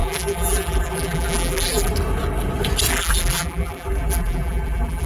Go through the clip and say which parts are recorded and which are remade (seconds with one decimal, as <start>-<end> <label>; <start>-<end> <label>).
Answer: 0.0-1.9 remade; 1.9-2.9 recorded; 2.9-5.1 remade